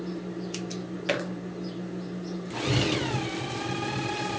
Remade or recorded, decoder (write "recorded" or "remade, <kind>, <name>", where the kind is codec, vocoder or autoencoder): recorded